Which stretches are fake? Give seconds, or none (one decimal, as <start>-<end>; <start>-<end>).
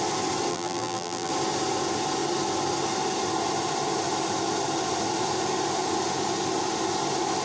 0.5-1.3